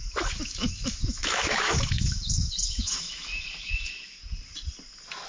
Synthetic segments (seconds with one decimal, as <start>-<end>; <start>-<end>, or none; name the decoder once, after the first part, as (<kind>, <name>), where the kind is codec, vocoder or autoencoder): 0.0-4.2 (autoencoder, DAC-VAE)